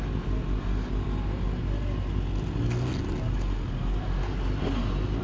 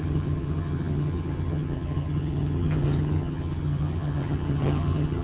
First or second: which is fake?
second